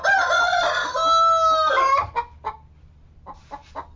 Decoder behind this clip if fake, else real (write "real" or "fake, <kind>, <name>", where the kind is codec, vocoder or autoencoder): real